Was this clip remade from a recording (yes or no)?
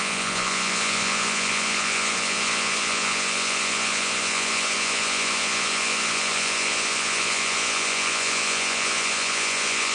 yes